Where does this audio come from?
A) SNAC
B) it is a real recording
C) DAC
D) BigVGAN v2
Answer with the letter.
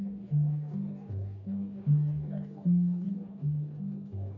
C